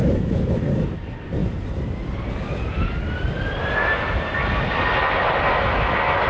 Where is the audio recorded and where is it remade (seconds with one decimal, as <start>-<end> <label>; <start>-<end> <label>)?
0.0-0.6 remade; 0.6-6.3 recorded